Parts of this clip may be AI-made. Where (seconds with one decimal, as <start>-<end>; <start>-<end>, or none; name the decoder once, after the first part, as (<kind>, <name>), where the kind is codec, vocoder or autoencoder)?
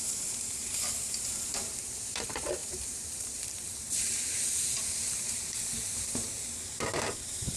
0.0-7.6 (vocoder, BigVGAN v2)